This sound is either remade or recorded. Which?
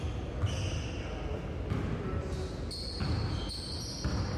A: recorded